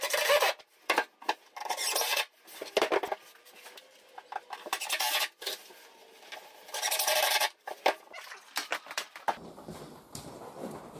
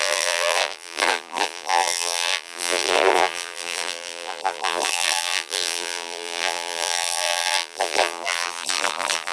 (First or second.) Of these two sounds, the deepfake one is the second